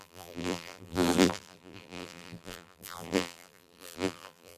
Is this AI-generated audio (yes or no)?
yes